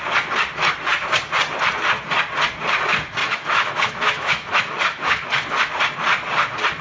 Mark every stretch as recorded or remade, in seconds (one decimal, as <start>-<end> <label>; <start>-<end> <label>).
0.0-3.2 recorded; 3.2-5.7 remade; 5.7-6.8 recorded